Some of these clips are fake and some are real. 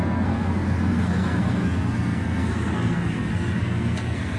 fake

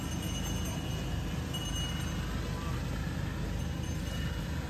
real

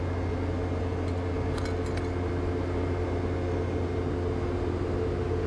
real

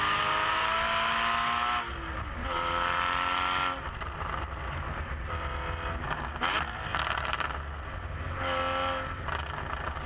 real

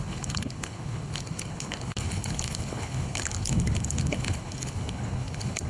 fake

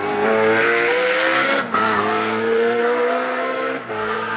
fake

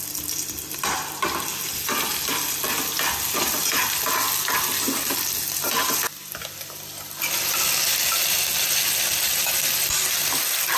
real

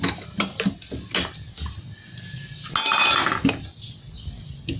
real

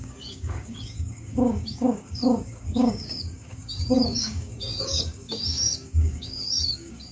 fake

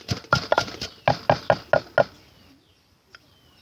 real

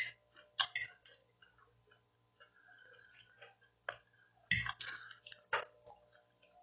real